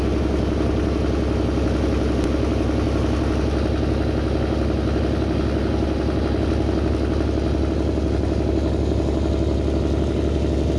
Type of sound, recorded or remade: recorded